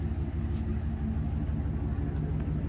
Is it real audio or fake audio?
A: real